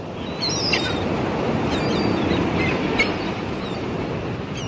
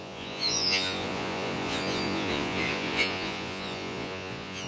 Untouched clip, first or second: first